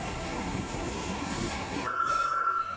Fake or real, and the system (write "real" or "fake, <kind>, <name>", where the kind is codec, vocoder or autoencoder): fake, codec, SNAC